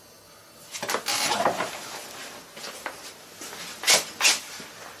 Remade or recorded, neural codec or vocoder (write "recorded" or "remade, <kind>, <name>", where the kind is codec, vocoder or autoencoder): recorded